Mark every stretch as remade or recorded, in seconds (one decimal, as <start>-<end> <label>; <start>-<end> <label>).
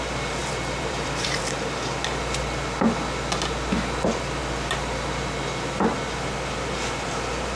0.0-0.4 recorded; 0.4-1.4 remade; 1.4-7.6 recorded